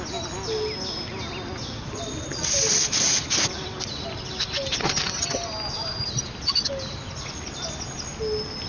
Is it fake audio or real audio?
real